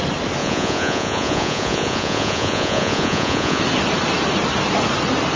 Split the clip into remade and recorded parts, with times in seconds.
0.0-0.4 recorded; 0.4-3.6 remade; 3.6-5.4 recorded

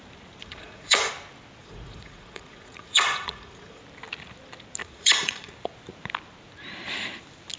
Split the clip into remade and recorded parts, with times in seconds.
0.0-0.4 recorded; 0.4-1.1 remade; 1.1-1.6 recorded; 1.6-3.8 remade; 3.8-4.8 recorded; 4.8-5.5 remade; 5.5-7.6 recorded

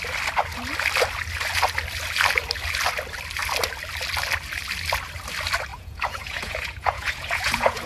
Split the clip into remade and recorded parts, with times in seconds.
0.0-5.7 recorded; 5.7-7.9 remade

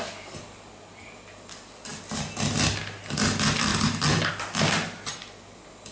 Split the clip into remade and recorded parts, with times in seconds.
0.0-5.9 recorded

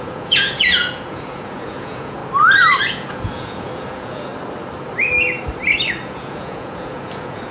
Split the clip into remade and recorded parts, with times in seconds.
0.0-2.2 remade; 2.2-2.8 recorded; 2.8-4.3 remade; 4.3-6.0 recorded; 6.0-7.5 remade